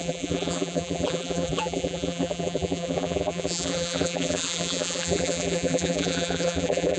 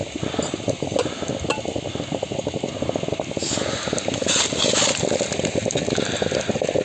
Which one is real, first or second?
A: second